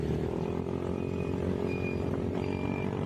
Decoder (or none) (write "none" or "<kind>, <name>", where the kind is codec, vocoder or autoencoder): none